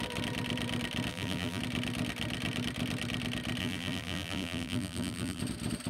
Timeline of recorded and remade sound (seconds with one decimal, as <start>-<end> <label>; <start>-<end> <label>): 0.0-1.1 recorded; 1.1-1.6 remade; 1.6-3.6 recorded; 3.6-5.4 remade; 5.4-5.9 recorded

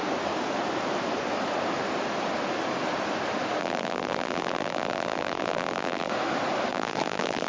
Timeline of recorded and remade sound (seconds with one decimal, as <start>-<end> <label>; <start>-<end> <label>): 0.0-3.6 recorded; 3.6-6.1 remade; 6.1-6.7 recorded; 6.7-7.5 remade

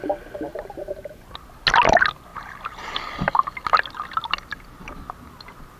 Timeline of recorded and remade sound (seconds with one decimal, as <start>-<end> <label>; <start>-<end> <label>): 0.0-0.5 recorded; 0.5-1.1 remade; 1.1-2.3 recorded; 2.3-3.5 remade; 3.5-5.8 recorded